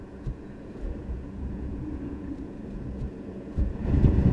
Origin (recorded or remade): remade